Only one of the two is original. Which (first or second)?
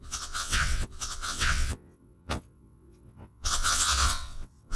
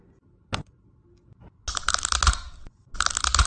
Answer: second